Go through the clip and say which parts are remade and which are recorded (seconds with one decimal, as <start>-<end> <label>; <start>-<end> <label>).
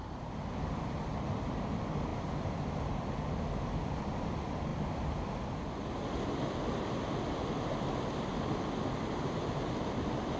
0.0-10.4 recorded